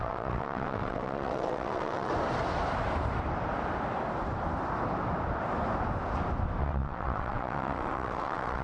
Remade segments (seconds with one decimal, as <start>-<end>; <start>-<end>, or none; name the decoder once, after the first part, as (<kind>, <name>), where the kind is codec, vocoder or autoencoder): 0.0-2.1 (vocoder, WaveNeXt); 6.6-8.6